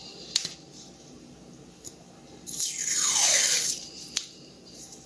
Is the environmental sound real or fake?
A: fake